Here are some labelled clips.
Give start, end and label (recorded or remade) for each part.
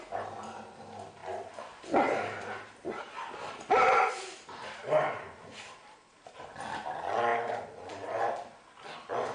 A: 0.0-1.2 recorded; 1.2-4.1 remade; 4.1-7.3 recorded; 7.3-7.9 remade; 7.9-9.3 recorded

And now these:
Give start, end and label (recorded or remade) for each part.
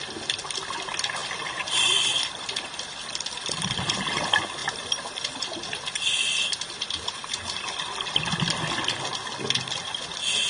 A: 0.0-1.2 recorded; 1.2-4.0 remade; 4.0-4.6 recorded; 4.6-8.2 remade; 8.2-10.5 recorded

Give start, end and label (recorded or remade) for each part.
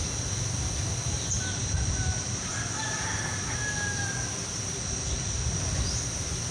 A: 0.0-6.5 recorded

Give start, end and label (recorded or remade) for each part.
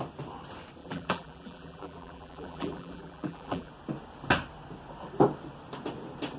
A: 0.0-0.8 recorded; 0.8-3.7 remade; 3.7-6.4 recorded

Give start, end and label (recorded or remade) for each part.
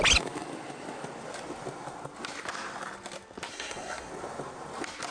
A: 0.0-3.5 recorded; 3.5-4.1 remade; 4.1-5.1 recorded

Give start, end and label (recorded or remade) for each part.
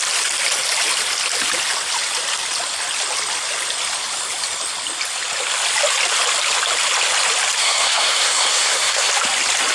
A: 0.0-7.6 recorded; 7.6-9.1 remade; 9.1-9.7 recorded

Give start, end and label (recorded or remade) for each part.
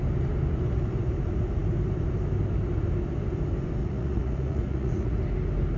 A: 0.0-3.8 recorded; 3.8-5.2 remade; 5.2-5.8 recorded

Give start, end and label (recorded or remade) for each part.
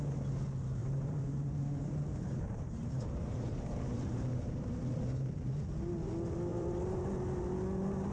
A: 0.0-0.8 recorded; 0.8-4.8 remade; 4.8-6.5 recorded; 6.5-7.1 remade; 7.1-8.1 recorded